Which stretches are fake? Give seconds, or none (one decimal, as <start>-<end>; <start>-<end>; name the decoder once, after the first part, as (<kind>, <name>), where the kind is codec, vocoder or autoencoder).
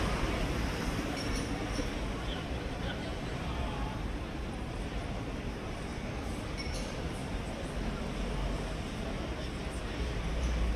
0.0-3.1 (vocoder, BigVGAN v2); 4.1-5.9; 6.6-7.2; 9.8-10.8